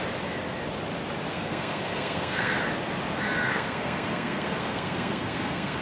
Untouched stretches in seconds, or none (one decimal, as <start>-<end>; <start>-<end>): 0.0-1.3; 2.6-3.5